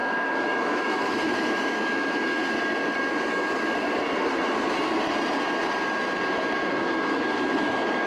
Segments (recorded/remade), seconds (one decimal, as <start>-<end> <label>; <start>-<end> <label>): 0.0-2.4 remade; 2.4-6.7 recorded; 6.7-8.1 remade